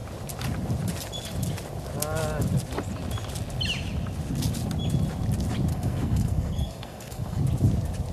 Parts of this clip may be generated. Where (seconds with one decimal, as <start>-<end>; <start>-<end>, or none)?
5.7-7.4

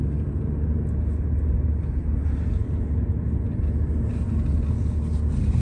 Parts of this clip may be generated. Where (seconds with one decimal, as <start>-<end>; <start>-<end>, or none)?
none

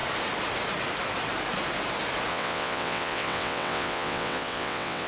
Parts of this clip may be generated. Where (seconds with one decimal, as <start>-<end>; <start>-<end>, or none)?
2.3-5.1

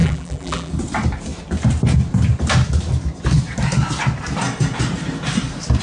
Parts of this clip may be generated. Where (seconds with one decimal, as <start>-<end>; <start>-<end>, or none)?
0.0-0.7

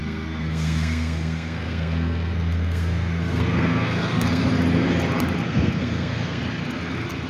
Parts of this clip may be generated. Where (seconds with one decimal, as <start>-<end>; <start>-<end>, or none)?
0.0-4.4; 5.4-6.4